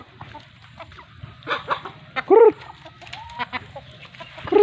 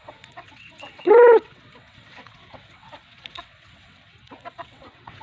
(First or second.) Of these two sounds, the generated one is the second